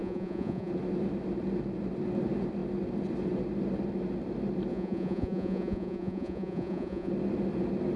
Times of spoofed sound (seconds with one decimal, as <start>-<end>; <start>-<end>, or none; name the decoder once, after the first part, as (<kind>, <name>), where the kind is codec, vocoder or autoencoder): 0.0-0.7 (vocoder, Vocos); 4.7-7.1